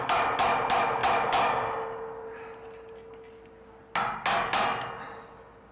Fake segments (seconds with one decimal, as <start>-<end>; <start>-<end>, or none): none